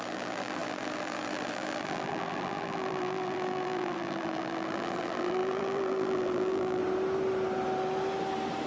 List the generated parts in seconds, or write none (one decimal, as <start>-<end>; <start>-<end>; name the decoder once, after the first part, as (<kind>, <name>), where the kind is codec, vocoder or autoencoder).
0.0-6.8 (vocoder, BigVGAN v2)